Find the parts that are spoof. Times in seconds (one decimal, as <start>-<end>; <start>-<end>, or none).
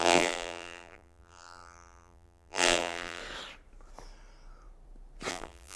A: 0.0-3.2; 5.3-5.8